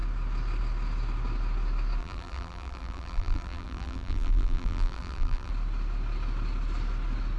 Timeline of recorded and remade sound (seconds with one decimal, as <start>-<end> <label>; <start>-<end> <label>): 0.0-2.0 recorded; 2.0-5.5 remade; 5.5-7.4 recorded

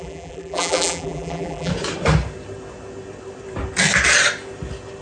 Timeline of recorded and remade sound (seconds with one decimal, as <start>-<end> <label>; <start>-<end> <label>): 0.0-1.7 remade; 1.7-5.0 recorded

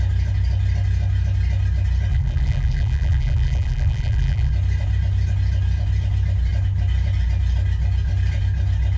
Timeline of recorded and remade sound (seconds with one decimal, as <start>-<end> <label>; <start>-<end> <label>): 0.0-2.1 recorded; 2.1-4.5 remade; 4.5-9.0 recorded

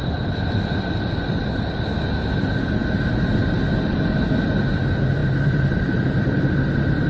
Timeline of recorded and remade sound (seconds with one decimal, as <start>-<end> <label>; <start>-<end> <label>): 0.0-0.9 remade; 0.9-5.2 recorded; 5.2-6.5 remade; 6.5-7.1 recorded

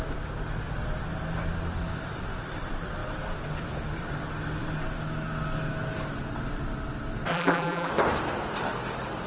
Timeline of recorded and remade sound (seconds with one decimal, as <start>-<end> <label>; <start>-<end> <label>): 0.0-7.3 recorded; 7.3-7.9 remade; 7.9-9.3 recorded

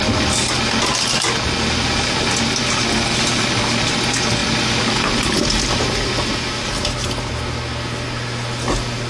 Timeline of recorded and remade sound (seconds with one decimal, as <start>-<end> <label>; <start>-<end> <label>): 0.0-4.4 recorded; 4.4-7.3 remade; 7.3-9.1 recorded

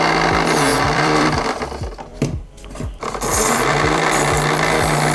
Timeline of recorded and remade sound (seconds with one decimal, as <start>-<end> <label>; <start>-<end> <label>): 0.0-0.7 recorded; 0.7-1.4 remade; 1.4-2.1 recorded; 2.1-4.2 remade; 4.2-5.1 recorded

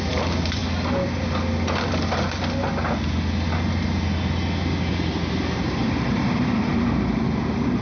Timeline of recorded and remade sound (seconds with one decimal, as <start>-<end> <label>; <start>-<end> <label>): 0.0-0.6 remade; 0.6-4.9 recorded; 4.9-7.8 remade